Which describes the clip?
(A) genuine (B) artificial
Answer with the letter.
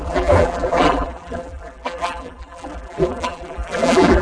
B